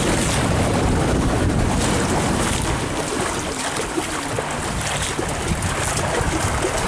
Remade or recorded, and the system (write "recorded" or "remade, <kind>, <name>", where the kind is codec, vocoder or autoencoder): recorded